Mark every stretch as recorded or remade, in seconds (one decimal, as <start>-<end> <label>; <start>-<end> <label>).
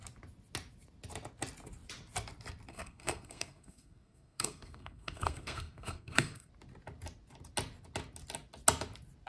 0.0-2.7 recorded; 2.7-6.5 remade; 6.5-9.3 recorded